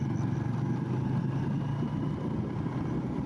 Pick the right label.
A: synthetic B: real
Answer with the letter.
B